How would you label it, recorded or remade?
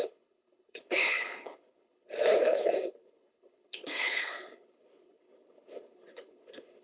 remade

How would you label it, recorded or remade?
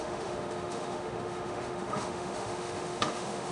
remade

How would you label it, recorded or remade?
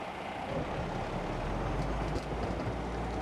recorded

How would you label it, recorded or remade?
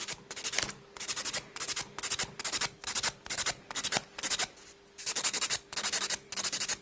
recorded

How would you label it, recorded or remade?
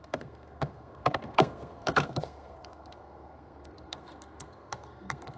remade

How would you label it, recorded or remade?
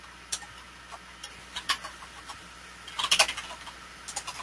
recorded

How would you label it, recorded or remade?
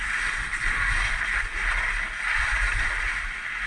recorded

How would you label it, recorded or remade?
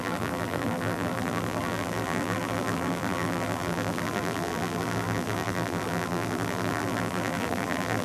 remade